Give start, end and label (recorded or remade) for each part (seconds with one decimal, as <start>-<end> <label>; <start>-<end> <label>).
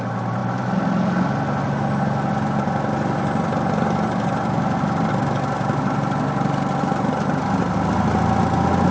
0.0-8.9 recorded